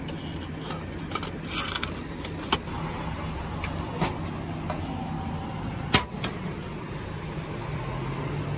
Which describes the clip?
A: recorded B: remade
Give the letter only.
A